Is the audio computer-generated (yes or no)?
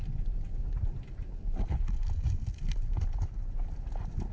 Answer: no